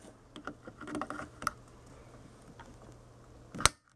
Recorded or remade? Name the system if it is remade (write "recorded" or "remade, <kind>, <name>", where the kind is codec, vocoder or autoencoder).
recorded